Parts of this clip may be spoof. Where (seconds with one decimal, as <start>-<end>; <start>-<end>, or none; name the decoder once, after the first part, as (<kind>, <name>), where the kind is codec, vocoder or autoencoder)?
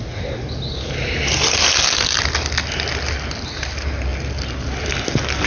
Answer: none